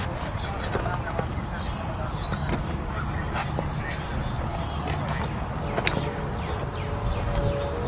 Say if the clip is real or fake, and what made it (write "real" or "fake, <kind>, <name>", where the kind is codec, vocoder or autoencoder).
real